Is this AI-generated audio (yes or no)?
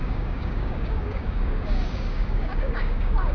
yes